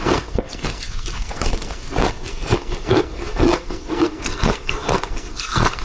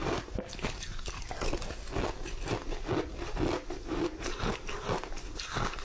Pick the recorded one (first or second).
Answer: second